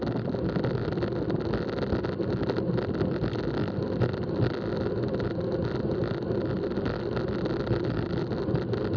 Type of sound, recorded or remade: recorded